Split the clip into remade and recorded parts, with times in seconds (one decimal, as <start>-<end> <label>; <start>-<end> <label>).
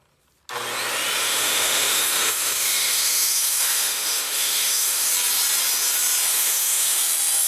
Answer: 0.0-1.2 recorded; 1.2-5.1 remade; 5.1-6.3 recorded; 6.3-7.0 remade; 7.0-7.5 recorded